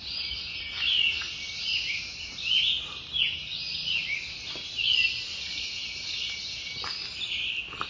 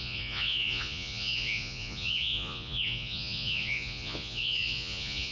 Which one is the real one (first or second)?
first